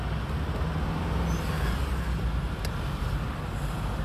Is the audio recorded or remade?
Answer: recorded